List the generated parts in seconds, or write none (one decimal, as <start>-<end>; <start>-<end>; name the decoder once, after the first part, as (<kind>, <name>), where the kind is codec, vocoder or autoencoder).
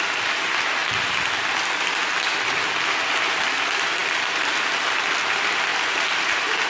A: 0.0-5.7 (vocoder, BigVGAN v2); 6.3-6.7